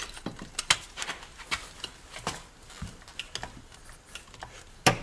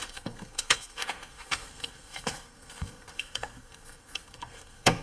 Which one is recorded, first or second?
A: first